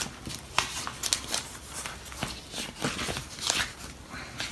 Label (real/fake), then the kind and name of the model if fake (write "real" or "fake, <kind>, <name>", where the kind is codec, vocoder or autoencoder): real